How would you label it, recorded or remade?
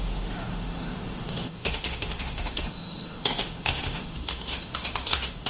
remade